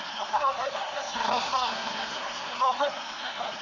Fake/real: fake